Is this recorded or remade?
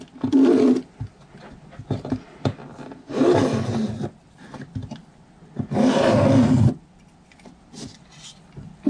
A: recorded